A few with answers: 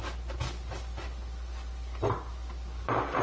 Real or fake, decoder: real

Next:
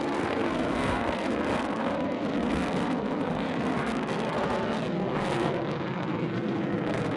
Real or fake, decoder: fake, codec, SNAC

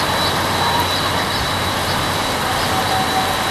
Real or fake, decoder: real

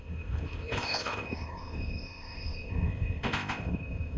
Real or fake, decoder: fake, codec, ZipCodec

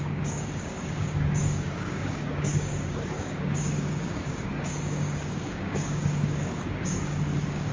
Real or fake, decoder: fake, codec, DAC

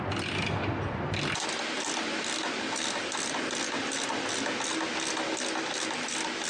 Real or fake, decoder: real